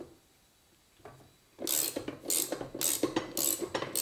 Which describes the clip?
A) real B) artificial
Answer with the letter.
A